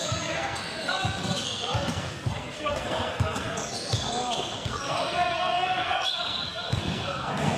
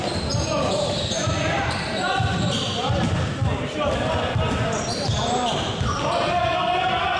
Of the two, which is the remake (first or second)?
first